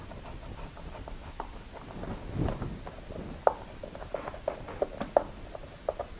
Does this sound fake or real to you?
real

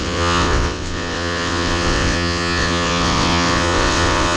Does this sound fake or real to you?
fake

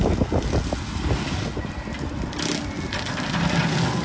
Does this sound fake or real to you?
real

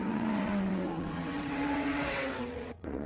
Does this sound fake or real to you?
fake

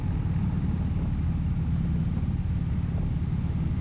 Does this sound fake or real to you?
real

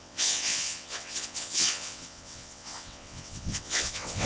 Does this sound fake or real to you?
fake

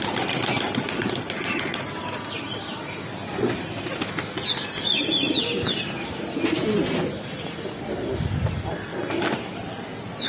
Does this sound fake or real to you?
real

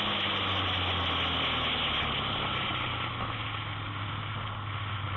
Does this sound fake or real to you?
real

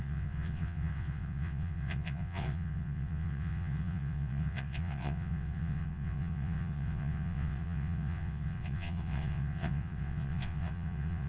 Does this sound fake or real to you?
fake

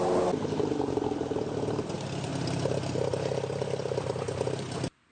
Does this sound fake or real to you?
real